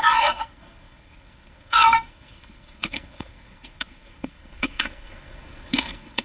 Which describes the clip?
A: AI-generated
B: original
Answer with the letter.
A